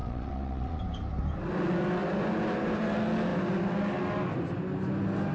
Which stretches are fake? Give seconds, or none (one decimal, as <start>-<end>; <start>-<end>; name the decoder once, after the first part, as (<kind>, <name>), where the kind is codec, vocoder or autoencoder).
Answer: 0.0-0.8 (vocoder, Vocos)